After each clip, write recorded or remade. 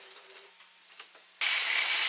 recorded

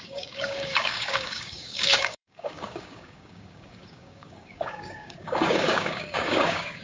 remade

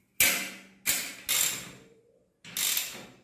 recorded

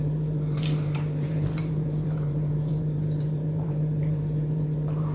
remade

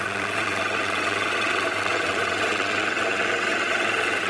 remade